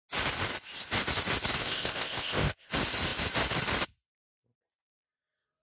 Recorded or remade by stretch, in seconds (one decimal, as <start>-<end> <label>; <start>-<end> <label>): 0.0-1.6 recorded; 1.6-2.7 remade; 2.7-5.6 recorded

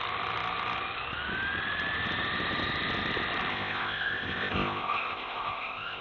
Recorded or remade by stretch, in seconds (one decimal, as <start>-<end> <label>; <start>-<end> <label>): 0.0-3.5 recorded; 3.5-6.0 remade

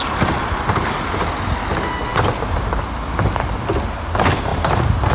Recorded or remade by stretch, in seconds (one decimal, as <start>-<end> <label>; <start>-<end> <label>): 0.0-5.1 recorded

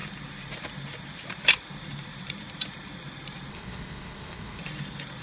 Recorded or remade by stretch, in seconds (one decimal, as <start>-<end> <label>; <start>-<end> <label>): 0.0-3.5 recorded; 3.5-4.6 remade; 4.6-5.2 recorded

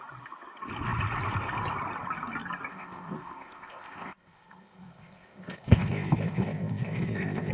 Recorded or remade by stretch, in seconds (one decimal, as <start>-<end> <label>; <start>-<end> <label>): 0.0-2.7 recorded; 2.7-7.5 remade

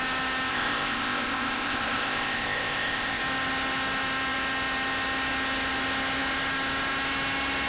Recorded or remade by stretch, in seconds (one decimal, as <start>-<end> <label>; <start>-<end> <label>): 0.0-0.5 recorded; 0.5-3.2 remade; 3.2-7.7 recorded

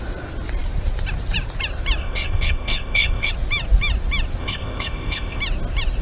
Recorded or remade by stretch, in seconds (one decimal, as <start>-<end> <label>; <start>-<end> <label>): 0.0-2.0 recorded; 2.0-3.3 remade; 3.3-4.4 recorded; 4.4-5.4 remade; 5.4-6.0 recorded

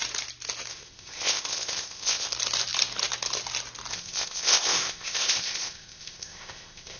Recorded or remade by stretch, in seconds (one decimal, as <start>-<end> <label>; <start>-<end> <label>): 0.0-0.7 recorded; 0.7-2.3 remade; 2.3-3.9 recorded; 3.9-7.0 remade